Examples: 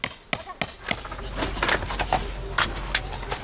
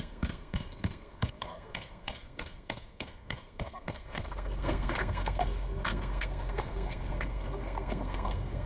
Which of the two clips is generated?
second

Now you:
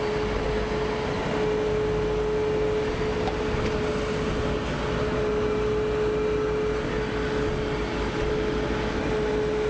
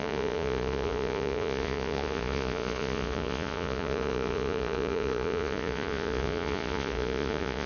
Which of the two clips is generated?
second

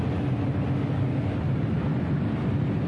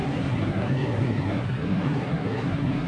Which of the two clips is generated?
second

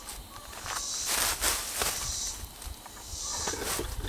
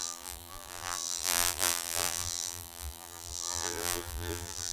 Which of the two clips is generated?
second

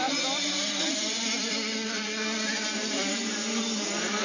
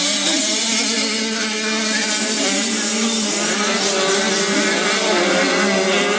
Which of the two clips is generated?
first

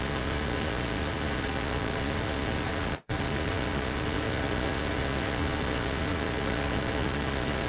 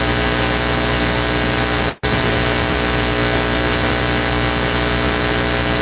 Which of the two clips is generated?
first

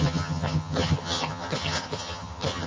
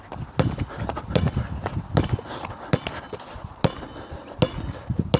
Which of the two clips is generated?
first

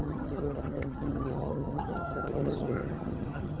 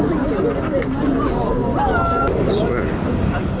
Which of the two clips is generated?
first